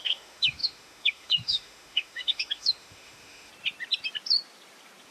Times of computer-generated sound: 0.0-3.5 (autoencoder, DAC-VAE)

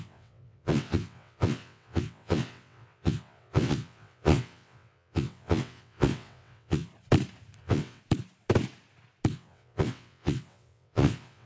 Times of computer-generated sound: 0.0-6.9 (vocoder, WaveNeXt); 7.6-8.0; 9.3-11.5

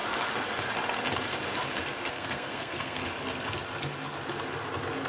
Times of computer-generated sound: 2.1-3.0 (codec, SNAC)